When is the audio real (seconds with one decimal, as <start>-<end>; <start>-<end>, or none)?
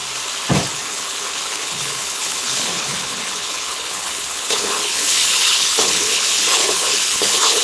0.0-0.7